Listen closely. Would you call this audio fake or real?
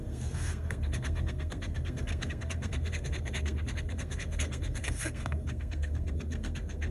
fake